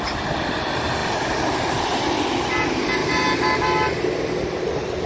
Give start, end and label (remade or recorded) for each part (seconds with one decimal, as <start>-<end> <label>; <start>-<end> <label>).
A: 0.0-5.1 recorded